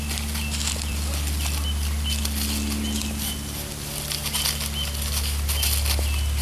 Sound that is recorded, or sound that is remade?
recorded